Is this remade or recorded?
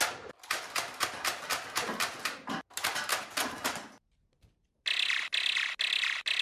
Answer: recorded